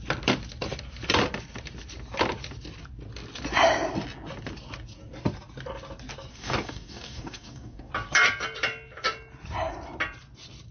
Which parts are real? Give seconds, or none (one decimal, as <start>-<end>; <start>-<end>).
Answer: 0.0-6.3; 7.9-10.7